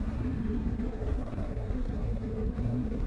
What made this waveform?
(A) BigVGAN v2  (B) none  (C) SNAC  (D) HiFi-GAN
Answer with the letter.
C